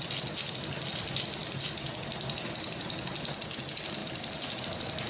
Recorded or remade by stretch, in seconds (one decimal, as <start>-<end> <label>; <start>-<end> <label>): 0.0-5.1 recorded